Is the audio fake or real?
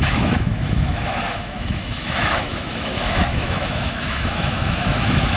fake